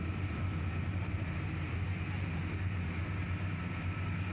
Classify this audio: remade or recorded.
recorded